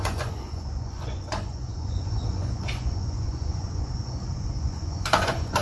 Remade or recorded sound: remade